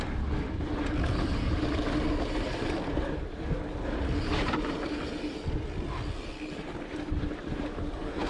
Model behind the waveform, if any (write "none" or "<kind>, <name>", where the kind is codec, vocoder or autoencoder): vocoder, BigVGAN v2